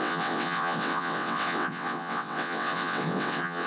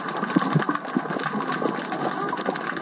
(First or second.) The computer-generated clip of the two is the first